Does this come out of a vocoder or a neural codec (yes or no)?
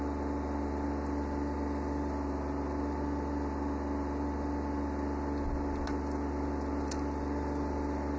no